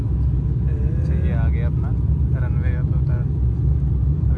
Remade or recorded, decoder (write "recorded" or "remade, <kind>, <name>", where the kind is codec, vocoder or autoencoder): recorded